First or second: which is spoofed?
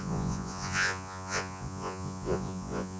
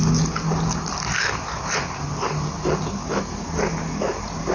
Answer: first